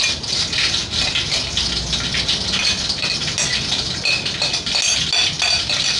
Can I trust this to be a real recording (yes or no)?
yes